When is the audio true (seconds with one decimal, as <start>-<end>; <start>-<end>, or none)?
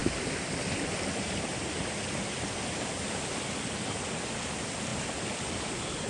0.0-6.1